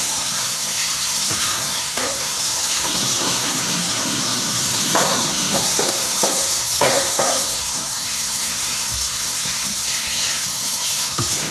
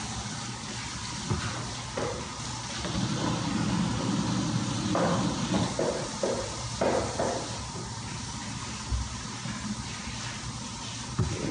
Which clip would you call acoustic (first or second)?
second